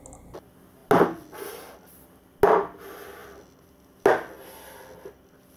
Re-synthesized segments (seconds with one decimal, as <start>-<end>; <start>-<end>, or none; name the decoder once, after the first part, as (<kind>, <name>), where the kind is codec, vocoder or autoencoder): none